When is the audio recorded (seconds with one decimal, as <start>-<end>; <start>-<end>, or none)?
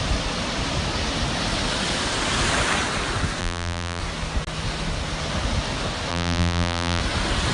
0.0-3.4; 4.0-6.1; 7.0-7.5